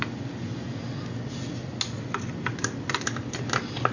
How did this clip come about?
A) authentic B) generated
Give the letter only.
A